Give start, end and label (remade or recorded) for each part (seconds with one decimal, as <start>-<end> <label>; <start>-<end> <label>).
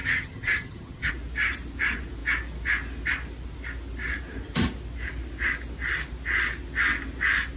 0.0-1.1 remade; 1.1-7.6 recorded